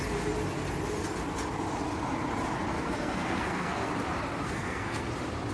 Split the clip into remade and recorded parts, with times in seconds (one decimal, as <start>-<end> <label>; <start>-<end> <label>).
0.0-2.7 recorded; 2.7-3.9 remade; 3.9-4.4 recorded; 4.4-5.1 remade; 5.1-5.5 recorded